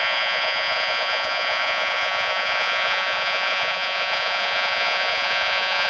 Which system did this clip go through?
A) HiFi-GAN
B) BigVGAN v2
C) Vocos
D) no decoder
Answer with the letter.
C